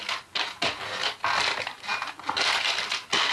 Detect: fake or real real